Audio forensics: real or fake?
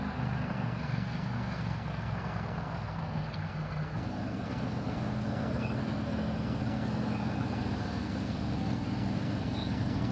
fake